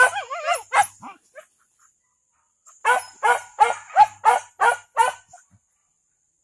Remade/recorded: recorded